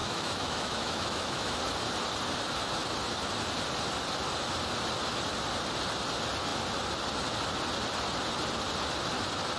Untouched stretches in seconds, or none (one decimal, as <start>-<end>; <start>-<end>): 1.6-9.6